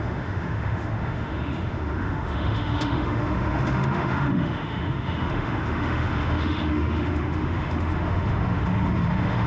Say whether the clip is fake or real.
fake